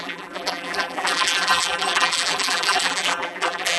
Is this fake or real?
fake